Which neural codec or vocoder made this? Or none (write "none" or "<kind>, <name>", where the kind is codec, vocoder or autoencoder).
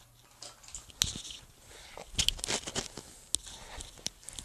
none